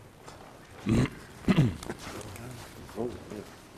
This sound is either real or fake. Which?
real